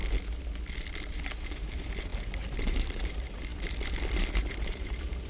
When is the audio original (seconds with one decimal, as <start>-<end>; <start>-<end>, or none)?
0.0-1.1; 3.5-4.4

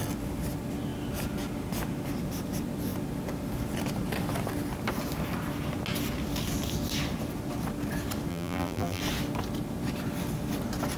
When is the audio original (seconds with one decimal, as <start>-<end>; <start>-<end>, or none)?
0.0-8.3; 9.0-11.0

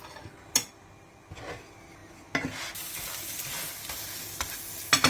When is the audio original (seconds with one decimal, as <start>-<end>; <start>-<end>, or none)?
0.0-5.1

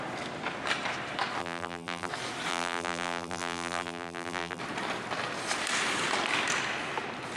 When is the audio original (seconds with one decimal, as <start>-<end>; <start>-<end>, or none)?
0.0-1.4; 2.1-2.5; 4.6-7.4

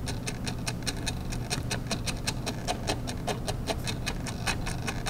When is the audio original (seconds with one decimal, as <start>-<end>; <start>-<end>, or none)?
0.0-5.1

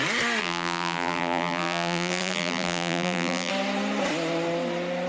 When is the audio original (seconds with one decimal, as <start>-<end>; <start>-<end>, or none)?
0.0-0.4; 3.5-5.1

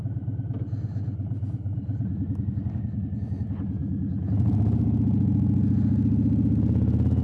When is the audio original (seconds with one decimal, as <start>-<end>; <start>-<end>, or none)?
0.0-7.2